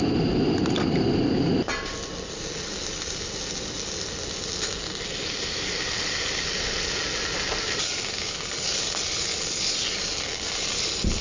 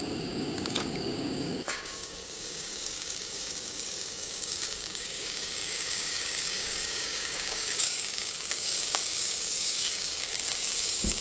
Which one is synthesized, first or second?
second